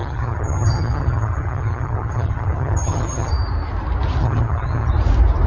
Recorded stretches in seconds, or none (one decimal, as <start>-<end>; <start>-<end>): 3.3-4.2; 4.9-5.5